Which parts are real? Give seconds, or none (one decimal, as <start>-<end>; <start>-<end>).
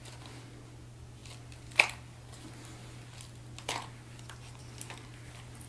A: 0.0-5.7